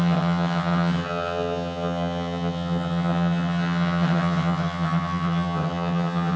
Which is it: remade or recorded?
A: remade